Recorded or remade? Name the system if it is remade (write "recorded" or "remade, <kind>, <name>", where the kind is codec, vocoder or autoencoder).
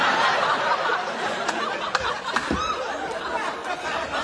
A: recorded